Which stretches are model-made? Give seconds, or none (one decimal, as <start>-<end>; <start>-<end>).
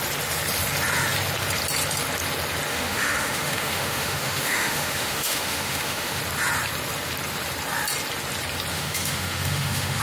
2.7-6.2; 8.7-10.0